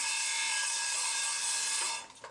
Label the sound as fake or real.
real